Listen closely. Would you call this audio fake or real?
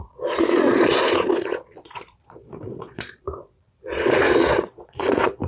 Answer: fake